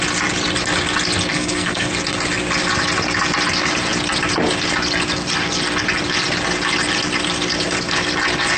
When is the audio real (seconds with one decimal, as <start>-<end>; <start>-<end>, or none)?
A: 0.0-1.3; 1.9-8.6